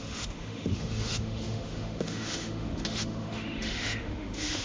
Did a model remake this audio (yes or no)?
yes